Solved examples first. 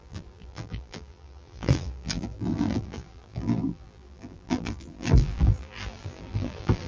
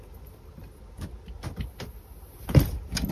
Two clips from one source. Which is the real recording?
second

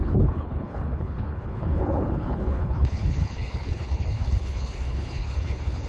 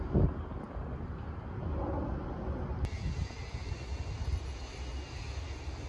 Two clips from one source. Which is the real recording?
second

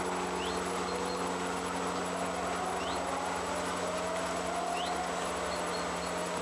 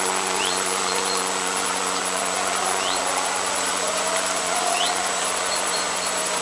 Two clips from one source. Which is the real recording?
first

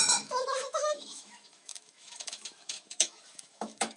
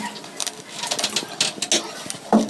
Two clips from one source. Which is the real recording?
second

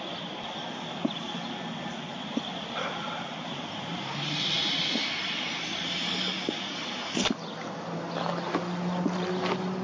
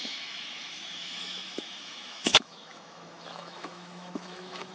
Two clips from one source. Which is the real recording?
first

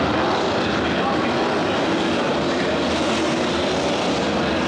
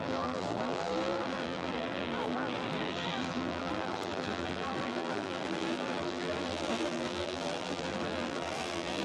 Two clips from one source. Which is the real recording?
first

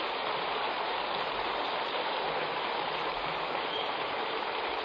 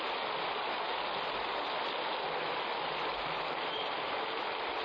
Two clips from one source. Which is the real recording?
second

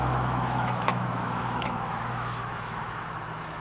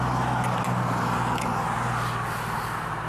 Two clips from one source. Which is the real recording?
second